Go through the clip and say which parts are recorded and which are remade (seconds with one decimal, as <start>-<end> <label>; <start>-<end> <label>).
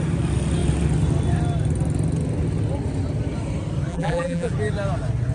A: 0.0-3.9 recorded; 3.9-4.5 remade; 4.5-5.3 recorded